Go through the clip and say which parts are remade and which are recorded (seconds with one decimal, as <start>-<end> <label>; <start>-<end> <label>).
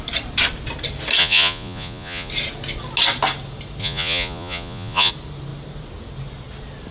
0.0-1.2 recorded; 1.2-2.3 remade; 2.3-3.8 recorded; 3.8-5.1 remade; 5.1-6.9 recorded